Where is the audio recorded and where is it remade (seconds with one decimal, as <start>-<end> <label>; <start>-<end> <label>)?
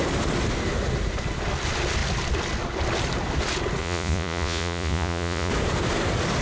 0.0-3.8 recorded; 3.8-5.5 remade; 5.5-6.4 recorded